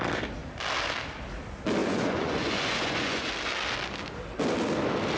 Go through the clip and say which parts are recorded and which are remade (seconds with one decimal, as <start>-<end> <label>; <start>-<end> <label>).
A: 0.0-1.8 recorded; 1.8-3.3 remade; 3.3-5.2 recorded